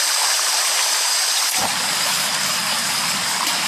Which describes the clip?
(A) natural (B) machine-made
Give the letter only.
A